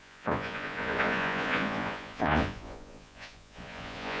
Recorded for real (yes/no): no